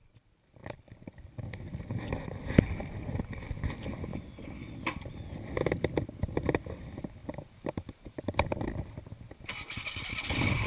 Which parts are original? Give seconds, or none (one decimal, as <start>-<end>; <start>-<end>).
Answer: 7.2-8.1

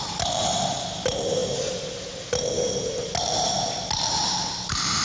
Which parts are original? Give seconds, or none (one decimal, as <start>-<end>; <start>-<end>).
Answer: 0.0-4.2

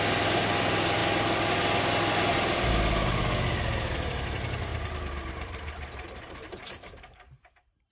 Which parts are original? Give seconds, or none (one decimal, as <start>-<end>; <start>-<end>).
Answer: 0.0-4.7

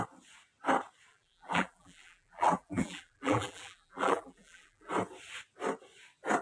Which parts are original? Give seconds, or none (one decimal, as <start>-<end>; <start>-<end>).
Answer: 0.0-1.1; 4.9-6.4

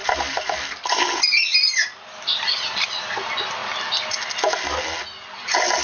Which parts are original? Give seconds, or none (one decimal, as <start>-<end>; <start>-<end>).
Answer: 0.8-1.5; 2.7-5.8

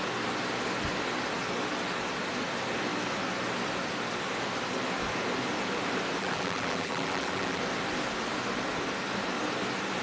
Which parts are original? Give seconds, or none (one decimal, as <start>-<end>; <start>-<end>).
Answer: 0.0-6.2; 7.6-10.0

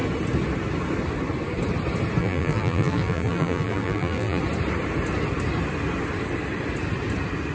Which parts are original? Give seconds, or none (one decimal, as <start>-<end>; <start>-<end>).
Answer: 0.0-2.2; 4.4-7.5